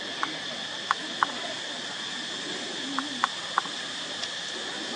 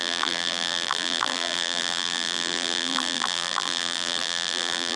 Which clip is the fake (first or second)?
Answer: second